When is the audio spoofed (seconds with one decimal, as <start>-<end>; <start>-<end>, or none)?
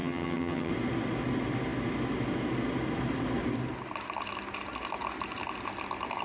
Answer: 0.0-0.7